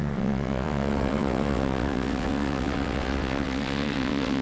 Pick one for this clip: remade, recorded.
remade